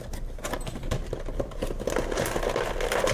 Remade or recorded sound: recorded